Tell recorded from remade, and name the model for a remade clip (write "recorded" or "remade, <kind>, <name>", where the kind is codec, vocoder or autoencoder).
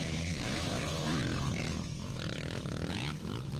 remade, autoencoder, DAC-VAE